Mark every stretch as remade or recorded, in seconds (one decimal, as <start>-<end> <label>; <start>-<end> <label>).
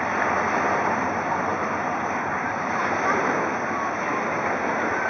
0.0-5.1 recorded